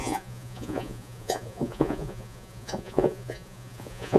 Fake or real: fake